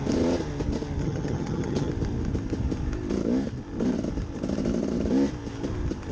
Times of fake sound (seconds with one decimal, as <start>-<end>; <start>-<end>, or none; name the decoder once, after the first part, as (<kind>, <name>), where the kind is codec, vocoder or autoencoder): 1.0-1.9 (vocoder, HiFi-GAN)